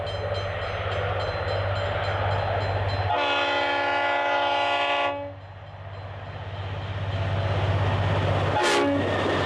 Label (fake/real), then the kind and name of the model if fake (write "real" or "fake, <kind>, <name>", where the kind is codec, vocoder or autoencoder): real